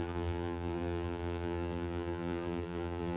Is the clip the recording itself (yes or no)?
no